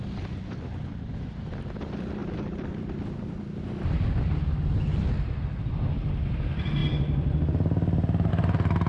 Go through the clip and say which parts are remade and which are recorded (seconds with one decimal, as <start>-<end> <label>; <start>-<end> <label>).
0.0-8.9 recorded

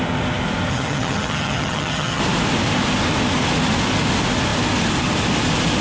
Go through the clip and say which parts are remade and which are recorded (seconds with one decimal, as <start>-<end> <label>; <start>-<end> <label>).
0.0-0.7 recorded; 0.7-2.2 remade; 2.2-5.8 recorded

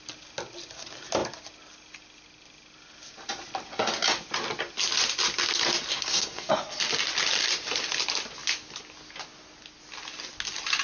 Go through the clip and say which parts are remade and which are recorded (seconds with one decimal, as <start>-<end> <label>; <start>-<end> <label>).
0.0-5.9 recorded; 5.9-6.5 remade; 6.5-10.8 recorded